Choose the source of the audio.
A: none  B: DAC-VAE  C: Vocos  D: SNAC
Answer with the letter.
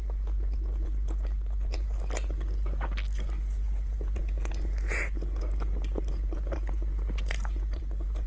A